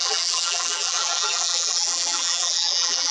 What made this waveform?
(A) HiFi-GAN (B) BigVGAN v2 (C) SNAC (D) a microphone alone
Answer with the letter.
B